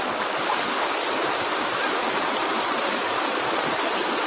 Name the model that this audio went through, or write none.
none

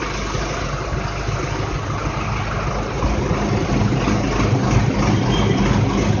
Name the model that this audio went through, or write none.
none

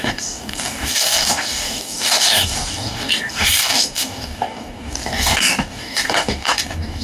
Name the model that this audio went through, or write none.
codec, DAC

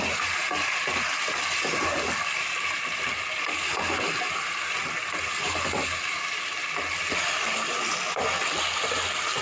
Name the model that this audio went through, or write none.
none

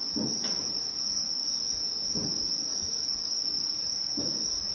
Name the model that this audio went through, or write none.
codec, DAC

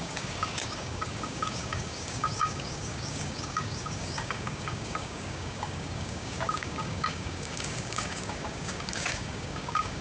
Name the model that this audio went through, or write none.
codec, DAC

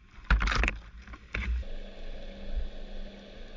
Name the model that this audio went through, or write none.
none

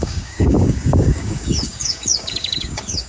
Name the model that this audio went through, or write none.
codec, DAC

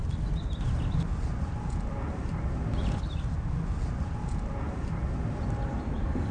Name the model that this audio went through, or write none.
none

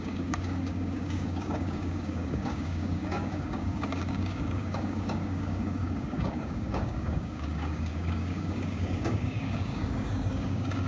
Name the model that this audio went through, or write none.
codec, DAC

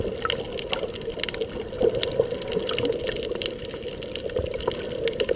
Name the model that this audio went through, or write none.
none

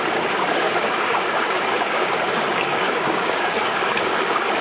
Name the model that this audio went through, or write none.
codec, DAC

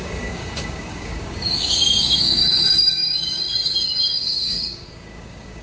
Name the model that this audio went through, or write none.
codec, DAC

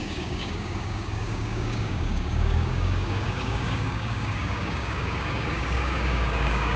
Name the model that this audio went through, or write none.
codec, DAC